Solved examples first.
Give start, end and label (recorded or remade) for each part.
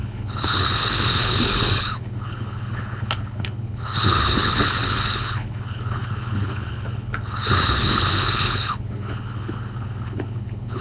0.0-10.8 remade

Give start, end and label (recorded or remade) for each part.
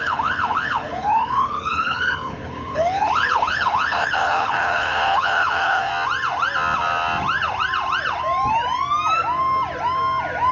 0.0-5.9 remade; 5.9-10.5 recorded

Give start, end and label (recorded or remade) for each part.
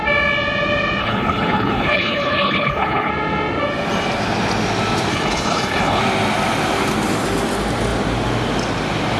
0.0-1.0 recorded; 1.0-3.1 remade; 3.1-5.1 recorded; 5.1-6.0 remade; 6.0-9.2 recorded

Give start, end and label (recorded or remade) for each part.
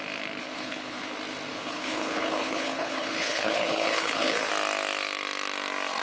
0.0-0.4 recorded; 0.4-1.1 remade; 1.1-1.5 recorded; 1.5-4.5 remade; 4.5-6.0 recorded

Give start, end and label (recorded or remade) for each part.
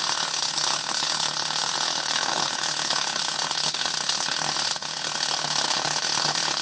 0.0-6.6 remade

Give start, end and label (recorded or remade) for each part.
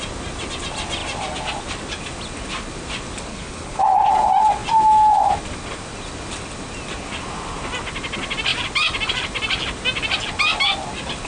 0.0-3.3 recorded; 3.3-4.1 remade; 4.1-11.3 recorded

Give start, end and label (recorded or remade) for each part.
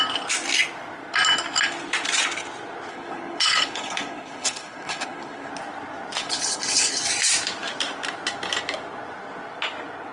0.0-2.9 recorded; 2.9-5.5 remade; 5.5-6.2 recorded; 6.2-7.0 remade; 7.0-10.1 recorded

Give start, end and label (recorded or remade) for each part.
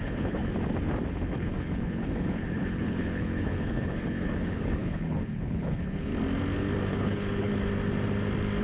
0.0-0.4 remade; 0.4-1.1 recorded; 1.1-6.1 remade; 6.1-6.9 recorded; 6.9-7.5 remade; 7.5-8.6 recorded